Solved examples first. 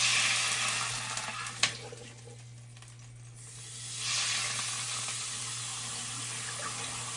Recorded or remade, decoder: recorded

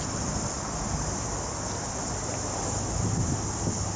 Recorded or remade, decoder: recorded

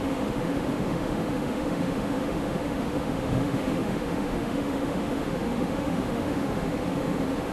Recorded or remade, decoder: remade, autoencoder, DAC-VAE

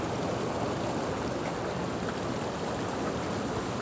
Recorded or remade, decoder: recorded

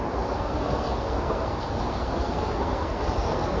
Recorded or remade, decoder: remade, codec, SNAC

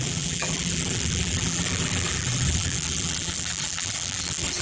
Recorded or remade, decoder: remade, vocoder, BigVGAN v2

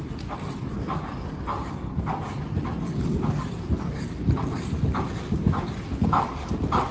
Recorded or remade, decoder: recorded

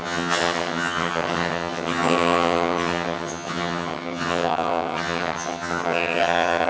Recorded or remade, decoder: remade, vocoder, HiFi-GAN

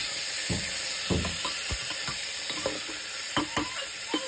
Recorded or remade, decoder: recorded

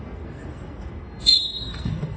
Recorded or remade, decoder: remade, codec, SNAC